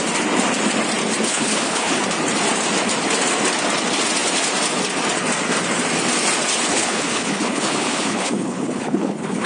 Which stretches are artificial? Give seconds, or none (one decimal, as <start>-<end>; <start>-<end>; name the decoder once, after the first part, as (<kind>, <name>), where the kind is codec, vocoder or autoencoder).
1.3-2.0 (codec, HILCodec); 6.7-9.5